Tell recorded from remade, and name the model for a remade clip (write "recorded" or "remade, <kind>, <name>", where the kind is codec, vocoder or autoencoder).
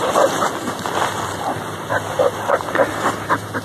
recorded